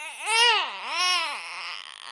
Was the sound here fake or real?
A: real